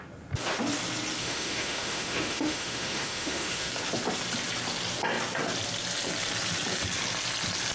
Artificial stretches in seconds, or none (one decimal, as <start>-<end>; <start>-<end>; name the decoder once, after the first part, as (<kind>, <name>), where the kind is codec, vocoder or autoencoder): 1.2-3.7 (autoencoder, DAC-VAE)